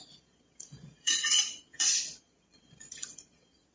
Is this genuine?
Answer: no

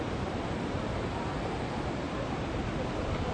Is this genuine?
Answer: yes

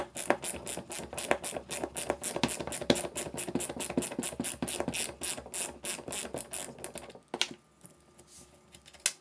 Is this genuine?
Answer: yes